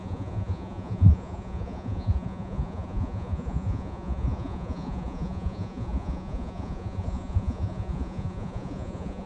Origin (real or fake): fake